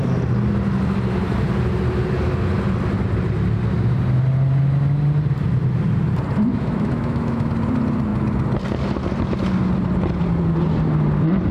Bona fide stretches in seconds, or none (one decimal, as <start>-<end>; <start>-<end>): 0.0-6.5; 7.5-11.5